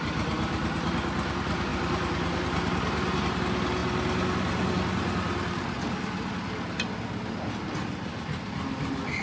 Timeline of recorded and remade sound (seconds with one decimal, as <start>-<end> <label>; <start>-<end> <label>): 0.0-9.2 recorded